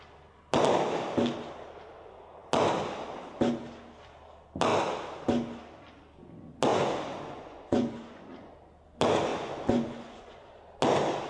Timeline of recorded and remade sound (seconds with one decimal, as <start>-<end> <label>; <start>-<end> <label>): 0.0-6.7 recorded; 6.7-8.5 remade; 8.5-9.3 recorded; 9.3-10.5 remade; 10.5-11.3 recorded